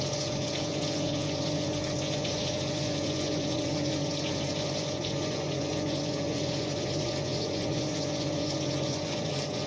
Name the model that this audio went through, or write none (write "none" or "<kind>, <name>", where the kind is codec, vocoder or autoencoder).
vocoder, Vocos